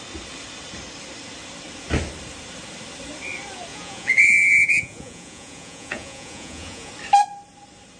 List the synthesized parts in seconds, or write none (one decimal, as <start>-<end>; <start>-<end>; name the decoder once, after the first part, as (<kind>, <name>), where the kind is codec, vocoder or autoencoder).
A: 3.7-6.9 (vocoder, Vocos)